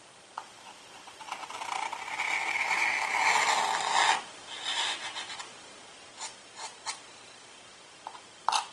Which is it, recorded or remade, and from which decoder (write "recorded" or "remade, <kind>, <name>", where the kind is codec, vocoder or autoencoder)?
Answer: recorded